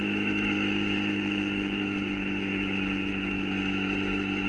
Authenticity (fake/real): fake